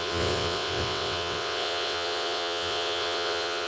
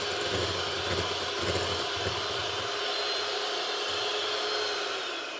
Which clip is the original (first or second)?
second